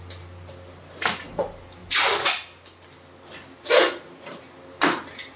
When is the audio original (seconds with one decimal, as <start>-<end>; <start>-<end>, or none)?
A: 0.0-5.4